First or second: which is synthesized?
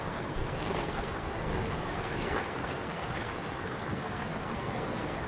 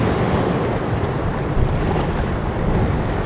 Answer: first